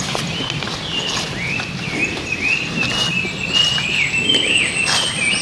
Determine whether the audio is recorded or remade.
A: recorded